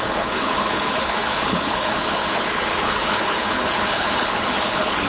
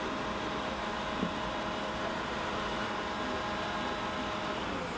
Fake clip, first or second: first